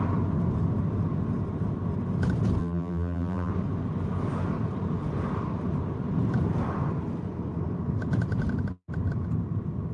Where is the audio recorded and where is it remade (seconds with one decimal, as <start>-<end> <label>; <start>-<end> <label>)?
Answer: 0.0-2.6 recorded; 2.6-3.5 remade; 3.5-9.9 recorded